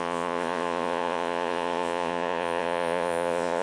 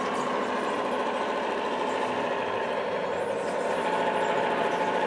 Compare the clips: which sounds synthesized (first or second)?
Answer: first